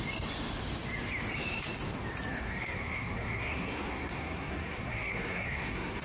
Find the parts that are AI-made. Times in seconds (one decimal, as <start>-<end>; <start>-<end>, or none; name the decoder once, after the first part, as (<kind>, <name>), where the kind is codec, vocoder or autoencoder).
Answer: 2.3-6.0 (codec, SNAC)